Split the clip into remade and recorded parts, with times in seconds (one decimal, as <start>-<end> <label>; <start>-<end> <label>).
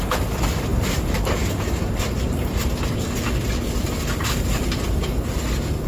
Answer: 0.0-0.7 recorded; 0.7-2.6 remade; 2.6-5.9 recorded